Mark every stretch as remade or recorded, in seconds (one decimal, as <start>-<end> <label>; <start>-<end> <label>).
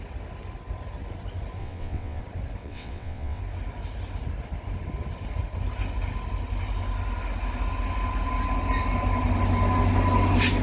0.0-1.6 recorded; 1.6-2.2 remade; 2.2-2.6 recorded; 2.6-3.4 remade; 3.4-10.6 recorded